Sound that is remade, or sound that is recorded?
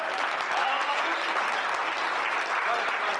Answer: recorded